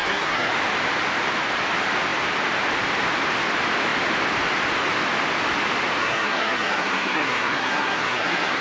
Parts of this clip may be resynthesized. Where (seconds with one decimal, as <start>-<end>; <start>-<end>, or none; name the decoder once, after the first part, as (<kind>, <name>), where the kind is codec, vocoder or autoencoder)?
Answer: 0.0-0.5 (codec, SNAC); 6.0-8.6